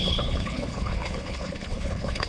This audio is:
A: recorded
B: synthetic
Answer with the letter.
B